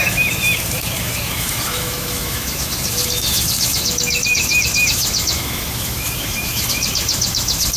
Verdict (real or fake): fake